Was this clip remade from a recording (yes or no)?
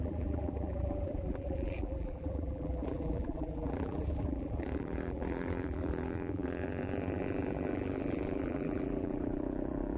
yes